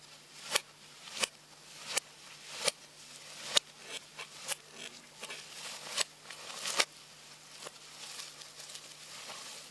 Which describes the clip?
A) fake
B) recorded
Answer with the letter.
B